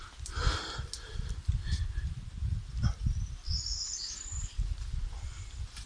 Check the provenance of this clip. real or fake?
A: real